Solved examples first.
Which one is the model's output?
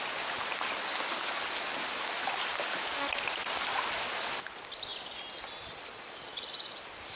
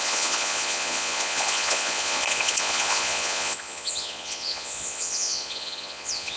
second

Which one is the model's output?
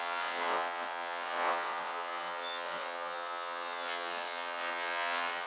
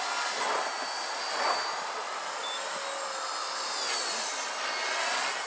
first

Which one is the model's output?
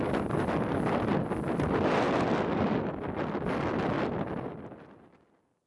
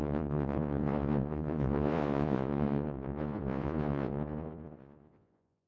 second